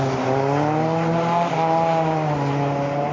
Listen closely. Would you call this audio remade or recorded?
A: recorded